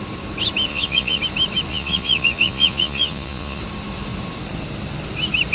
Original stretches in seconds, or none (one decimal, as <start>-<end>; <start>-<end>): 0.0-0.7; 1.2-1.7; 3.6-5.5